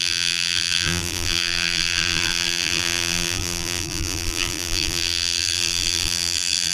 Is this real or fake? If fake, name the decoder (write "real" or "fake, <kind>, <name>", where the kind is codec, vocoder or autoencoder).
fake, vocoder, BigVGAN v2